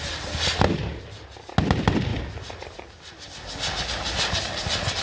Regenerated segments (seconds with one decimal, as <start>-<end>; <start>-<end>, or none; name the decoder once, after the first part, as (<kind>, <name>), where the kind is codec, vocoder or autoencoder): none